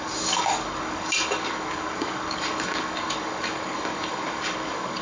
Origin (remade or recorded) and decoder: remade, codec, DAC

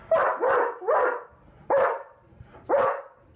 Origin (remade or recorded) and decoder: recorded